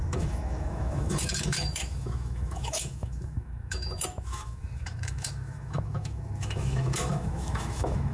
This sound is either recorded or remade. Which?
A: remade